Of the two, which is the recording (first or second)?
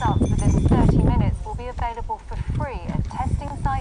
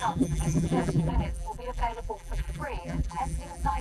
first